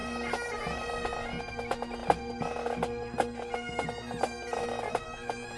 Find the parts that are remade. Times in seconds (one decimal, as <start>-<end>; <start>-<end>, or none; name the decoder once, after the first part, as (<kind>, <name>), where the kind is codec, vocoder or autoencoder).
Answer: none